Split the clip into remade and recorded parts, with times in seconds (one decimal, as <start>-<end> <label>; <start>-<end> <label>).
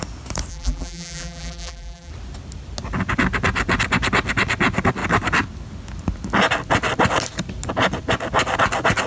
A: 0.0-0.5 recorded; 0.5-2.1 remade; 2.1-9.1 recorded